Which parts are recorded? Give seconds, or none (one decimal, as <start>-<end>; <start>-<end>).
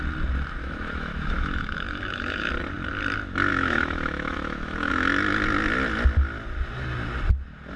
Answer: 0.0-0.6; 2.5-3.5; 5.1-7.8